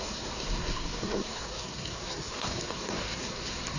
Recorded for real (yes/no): no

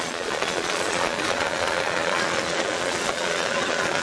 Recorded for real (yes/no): no